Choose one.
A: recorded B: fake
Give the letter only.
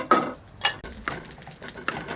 A